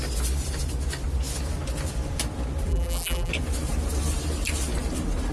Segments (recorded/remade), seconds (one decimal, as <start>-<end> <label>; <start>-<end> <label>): 0.0-2.7 recorded; 2.7-3.3 remade; 3.3-5.3 recorded